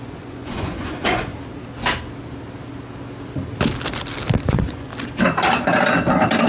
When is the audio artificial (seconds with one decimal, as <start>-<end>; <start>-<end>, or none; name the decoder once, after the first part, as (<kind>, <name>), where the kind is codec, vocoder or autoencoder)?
0.0-1.3 (vocoder, Vocos); 4.5-4.9